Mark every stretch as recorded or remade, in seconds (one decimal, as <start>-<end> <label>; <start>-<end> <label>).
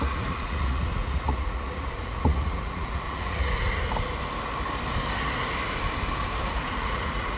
0.0-3.6 remade; 3.6-6.5 recorded; 6.5-7.4 remade